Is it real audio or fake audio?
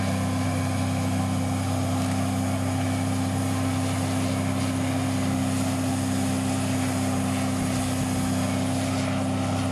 real